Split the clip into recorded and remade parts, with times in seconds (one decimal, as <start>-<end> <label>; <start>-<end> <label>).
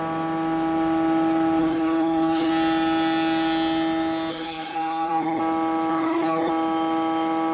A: 0.0-1.6 recorded; 1.6-2.5 remade; 2.5-4.3 recorded; 4.3-5.4 remade; 5.4-5.9 recorded; 5.9-6.5 remade; 6.5-7.5 recorded